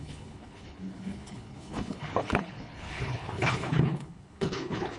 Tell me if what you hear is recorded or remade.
remade